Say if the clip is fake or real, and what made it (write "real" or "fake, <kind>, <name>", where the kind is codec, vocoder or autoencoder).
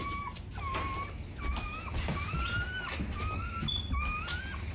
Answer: real